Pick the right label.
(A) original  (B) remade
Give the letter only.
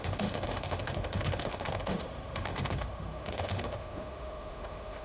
B